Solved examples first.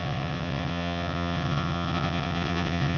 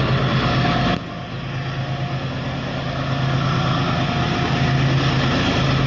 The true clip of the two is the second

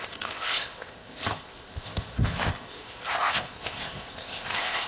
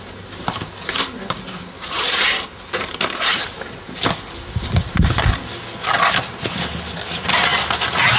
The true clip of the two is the second